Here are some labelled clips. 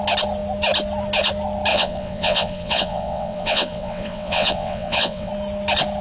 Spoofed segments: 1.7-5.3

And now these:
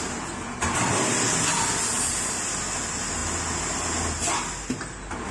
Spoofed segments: none

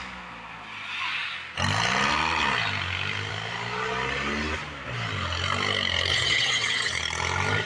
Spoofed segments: 6.1-7.0